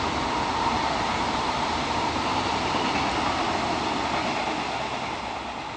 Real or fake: real